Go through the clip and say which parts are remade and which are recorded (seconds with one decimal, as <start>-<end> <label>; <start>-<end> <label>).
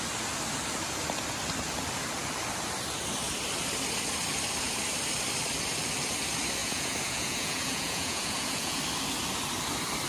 0.0-6.6 recorded; 6.6-8.8 remade; 8.8-10.1 recorded